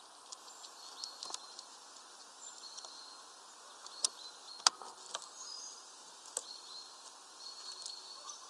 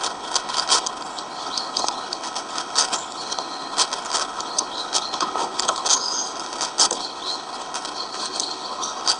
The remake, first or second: second